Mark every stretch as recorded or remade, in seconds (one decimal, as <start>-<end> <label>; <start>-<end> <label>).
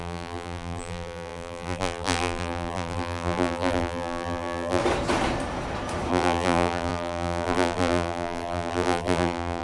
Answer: 0.0-4.8 remade; 4.8-6.1 recorded; 6.1-9.6 remade